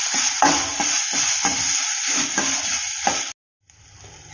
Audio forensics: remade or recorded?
recorded